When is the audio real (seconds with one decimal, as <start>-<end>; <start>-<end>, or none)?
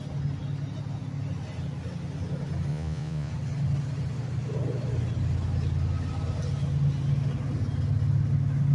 0.0-2.7; 3.3-8.7